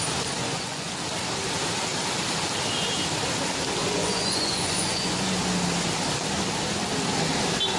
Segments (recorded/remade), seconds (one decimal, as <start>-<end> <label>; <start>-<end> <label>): 0.0-0.4 recorded; 0.4-0.9 remade; 0.9-3.8 recorded; 3.8-5.3 remade; 5.3-7.8 recorded